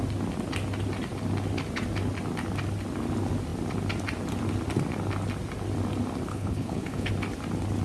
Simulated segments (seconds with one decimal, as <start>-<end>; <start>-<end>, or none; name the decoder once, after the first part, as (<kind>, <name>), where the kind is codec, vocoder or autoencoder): 6.3-7.1 (codec, HILCodec)